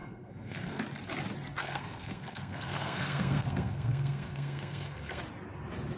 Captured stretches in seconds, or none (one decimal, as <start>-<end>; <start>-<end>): 0.8-1.6; 5.2-6.0